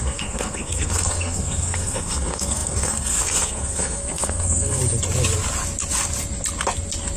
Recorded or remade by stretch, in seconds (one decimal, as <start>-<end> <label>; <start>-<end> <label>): 0.0-4.8 remade; 4.8-7.2 recorded